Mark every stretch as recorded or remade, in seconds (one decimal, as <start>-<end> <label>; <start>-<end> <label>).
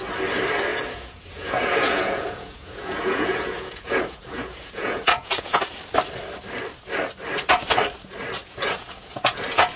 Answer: 0.0-0.7 recorded; 0.7-5.6 remade; 5.6-8.4 recorded; 8.4-9.4 remade; 9.4-9.8 recorded